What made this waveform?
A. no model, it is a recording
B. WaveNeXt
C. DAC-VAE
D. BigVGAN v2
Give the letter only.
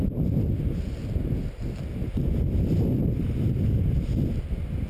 A